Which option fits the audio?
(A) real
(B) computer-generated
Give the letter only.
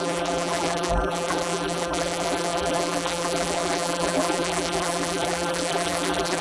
B